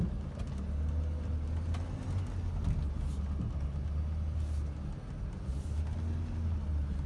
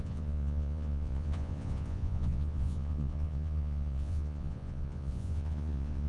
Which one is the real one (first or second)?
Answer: first